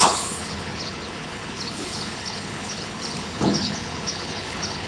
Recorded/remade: remade